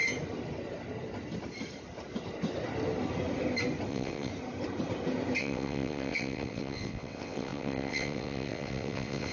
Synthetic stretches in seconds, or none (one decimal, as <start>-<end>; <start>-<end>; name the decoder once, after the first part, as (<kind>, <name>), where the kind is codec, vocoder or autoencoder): 3.9-4.3 (vocoder, WaveNeXt); 5.4-9.3